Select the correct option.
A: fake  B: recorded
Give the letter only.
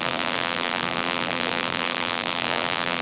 A